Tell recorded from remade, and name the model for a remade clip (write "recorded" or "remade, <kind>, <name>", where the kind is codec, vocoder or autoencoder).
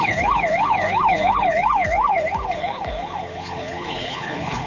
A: remade, codec, HILCodec